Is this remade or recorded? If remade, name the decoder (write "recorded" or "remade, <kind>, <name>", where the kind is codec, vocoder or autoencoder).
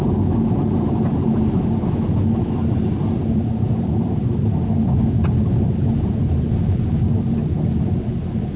recorded